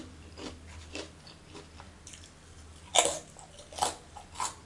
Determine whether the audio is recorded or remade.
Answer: recorded